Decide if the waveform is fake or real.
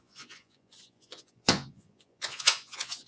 fake